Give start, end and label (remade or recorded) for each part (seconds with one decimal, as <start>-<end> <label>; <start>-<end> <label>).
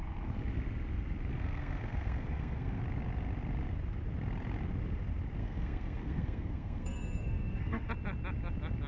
0.0-1.3 recorded; 1.3-2.8 remade; 2.8-5.4 recorded; 5.4-7.9 remade; 7.9-8.9 recorded